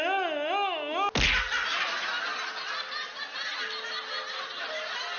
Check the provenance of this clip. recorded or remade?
recorded